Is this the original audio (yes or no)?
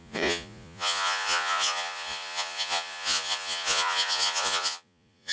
no